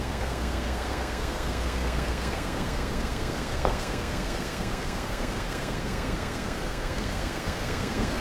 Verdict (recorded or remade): remade